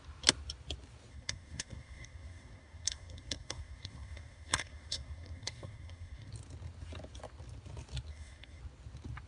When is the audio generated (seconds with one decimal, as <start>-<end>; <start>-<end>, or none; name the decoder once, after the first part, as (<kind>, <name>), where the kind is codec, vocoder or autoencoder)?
1.1-6.3 (codec, SNAC); 8.1-8.6